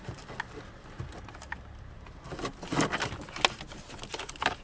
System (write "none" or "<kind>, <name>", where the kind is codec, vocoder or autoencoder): none